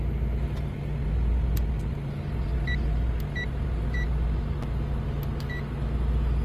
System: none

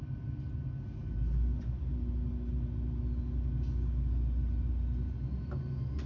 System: none